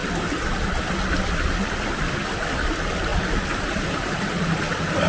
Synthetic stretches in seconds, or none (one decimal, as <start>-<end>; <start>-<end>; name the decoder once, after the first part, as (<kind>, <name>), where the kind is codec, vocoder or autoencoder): none